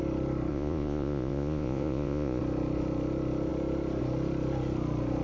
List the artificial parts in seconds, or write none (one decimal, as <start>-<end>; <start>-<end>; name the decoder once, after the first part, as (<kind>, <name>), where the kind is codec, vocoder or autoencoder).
0.5-2.4 (vocoder, Vocos)